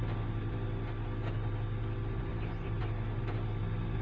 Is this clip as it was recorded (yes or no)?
yes